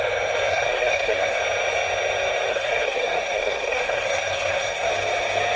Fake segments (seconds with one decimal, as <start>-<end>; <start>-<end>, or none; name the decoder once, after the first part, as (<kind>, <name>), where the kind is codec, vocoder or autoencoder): 0.5-1.4 (codec, SNAC); 2.5-4.9